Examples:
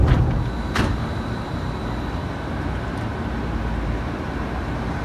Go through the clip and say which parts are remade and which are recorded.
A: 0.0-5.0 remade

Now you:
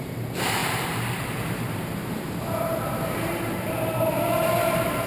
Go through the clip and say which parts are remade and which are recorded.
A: 0.0-5.1 remade

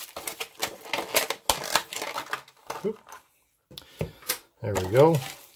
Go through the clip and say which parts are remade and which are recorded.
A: 0.0-5.6 recorded

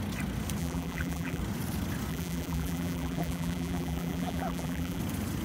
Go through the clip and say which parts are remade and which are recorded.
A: 0.0-0.6 recorded; 0.6-1.4 remade; 1.4-2.1 recorded; 2.1-5.0 remade; 5.0-5.4 recorded

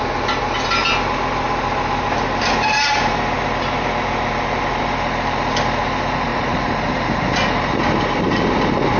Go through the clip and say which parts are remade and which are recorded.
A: 0.0-9.0 recorded

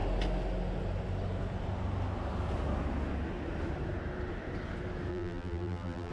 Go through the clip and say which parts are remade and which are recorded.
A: 0.0-5.1 recorded; 5.1-6.1 remade